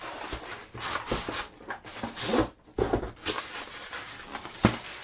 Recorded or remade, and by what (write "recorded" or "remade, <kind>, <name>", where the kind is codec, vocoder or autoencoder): recorded